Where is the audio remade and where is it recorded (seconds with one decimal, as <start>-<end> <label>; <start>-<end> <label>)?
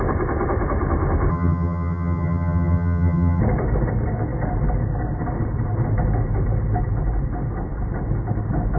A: 0.0-1.3 recorded; 1.3-3.4 remade; 3.4-8.8 recorded